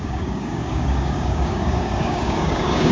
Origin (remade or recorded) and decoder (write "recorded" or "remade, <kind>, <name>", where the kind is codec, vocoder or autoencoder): remade, codec, DAC